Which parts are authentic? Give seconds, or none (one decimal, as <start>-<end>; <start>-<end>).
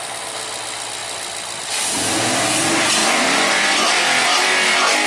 0.0-3.0; 3.9-5.1